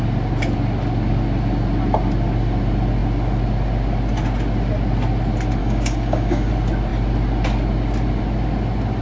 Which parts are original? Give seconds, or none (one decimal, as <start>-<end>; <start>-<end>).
0.0-5.6; 6.5-9.0